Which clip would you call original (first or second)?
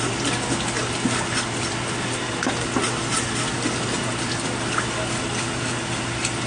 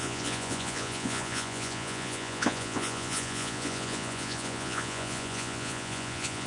first